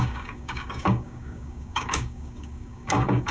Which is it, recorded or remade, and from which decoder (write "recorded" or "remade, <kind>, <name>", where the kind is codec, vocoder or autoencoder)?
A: remade, codec, DAC